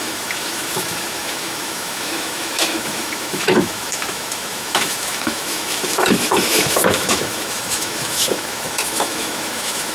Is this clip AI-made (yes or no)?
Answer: yes